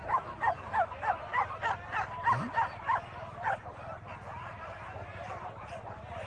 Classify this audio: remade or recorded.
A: recorded